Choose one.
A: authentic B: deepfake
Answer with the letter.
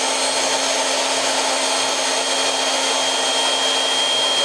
A